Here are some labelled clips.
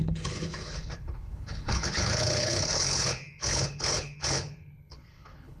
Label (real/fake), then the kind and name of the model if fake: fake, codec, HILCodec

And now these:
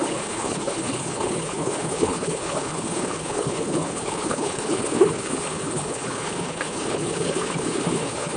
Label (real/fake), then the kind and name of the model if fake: fake, codec, HILCodec